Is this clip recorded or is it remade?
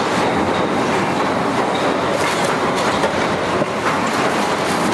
recorded